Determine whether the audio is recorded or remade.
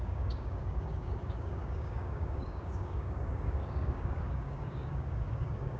remade